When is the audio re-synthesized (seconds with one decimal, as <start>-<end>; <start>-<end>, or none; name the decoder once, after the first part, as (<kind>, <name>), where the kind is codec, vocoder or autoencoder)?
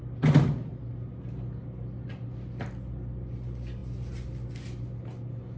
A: none